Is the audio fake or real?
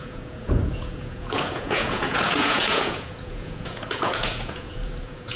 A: fake